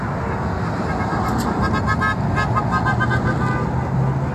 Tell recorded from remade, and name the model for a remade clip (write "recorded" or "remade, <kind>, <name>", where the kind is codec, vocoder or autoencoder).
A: recorded